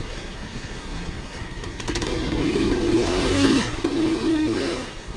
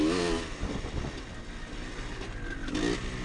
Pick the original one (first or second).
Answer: second